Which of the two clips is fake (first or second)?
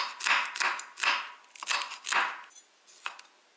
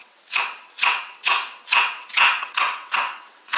second